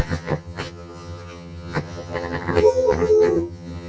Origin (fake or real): fake